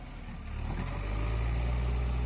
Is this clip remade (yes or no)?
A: no